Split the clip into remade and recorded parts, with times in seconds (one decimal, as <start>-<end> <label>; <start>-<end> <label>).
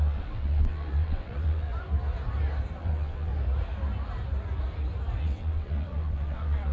0.0-1.7 remade; 1.7-2.8 recorded; 2.8-3.3 remade; 3.3-5.2 recorded; 5.2-6.7 remade